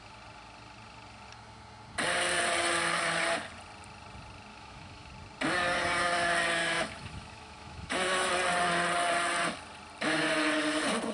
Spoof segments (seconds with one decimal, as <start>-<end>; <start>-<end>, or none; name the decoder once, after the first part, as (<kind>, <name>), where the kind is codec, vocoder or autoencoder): 4.5-5.1 (autoencoder, DAC-VAE); 6.6-8.3